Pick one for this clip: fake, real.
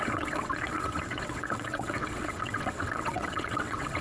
fake